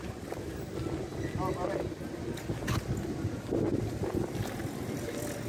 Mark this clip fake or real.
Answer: real